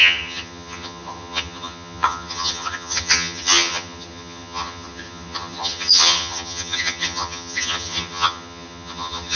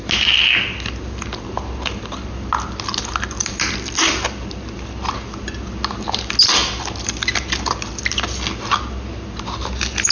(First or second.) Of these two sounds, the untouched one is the second